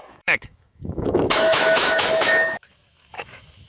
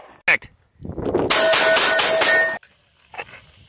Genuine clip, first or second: second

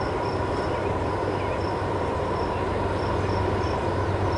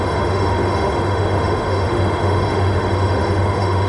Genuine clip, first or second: first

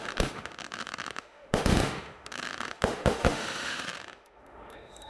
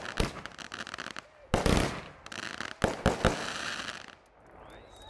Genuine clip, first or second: second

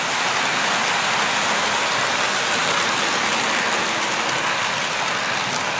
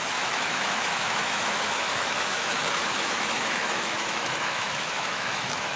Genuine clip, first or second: first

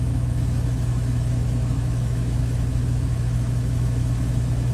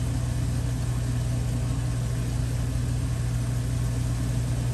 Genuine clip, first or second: second